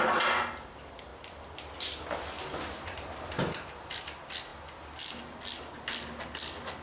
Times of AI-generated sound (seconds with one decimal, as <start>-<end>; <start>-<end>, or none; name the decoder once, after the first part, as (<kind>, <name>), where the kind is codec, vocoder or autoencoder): none